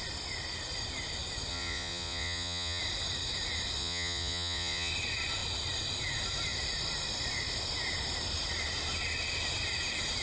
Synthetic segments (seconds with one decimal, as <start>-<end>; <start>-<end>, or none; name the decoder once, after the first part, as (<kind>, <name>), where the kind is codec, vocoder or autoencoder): 1.5-2.8 (vocoder, Vocos); 3.8-4.9